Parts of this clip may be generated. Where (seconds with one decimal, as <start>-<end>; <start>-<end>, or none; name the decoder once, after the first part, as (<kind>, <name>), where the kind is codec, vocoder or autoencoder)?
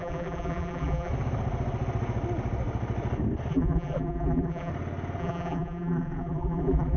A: 0.0-1.1 (vocoder, BigVGAN v2); 3.5-4.7; 5.2-7.0